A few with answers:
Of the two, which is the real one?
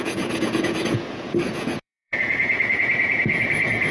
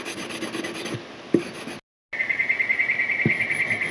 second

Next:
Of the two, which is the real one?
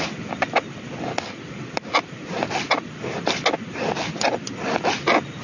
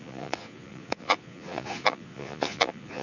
first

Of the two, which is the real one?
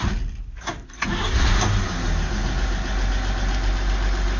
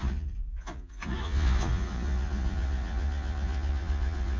first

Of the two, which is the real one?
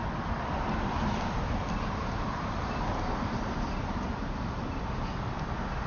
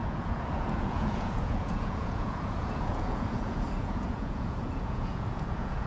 first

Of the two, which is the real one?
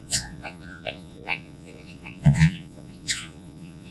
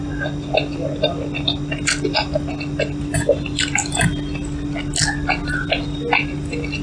second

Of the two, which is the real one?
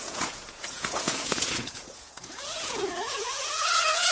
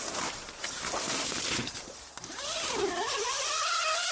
second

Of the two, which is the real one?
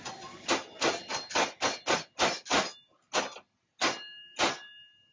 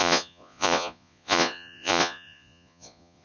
first